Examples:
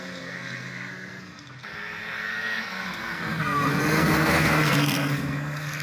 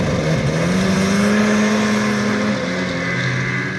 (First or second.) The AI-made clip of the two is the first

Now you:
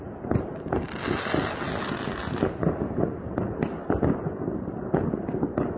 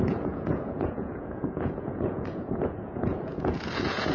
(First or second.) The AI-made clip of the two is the second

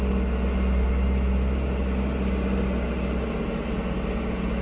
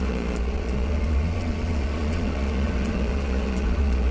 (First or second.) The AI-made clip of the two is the second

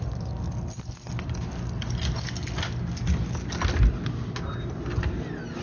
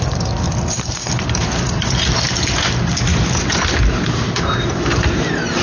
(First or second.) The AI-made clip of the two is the second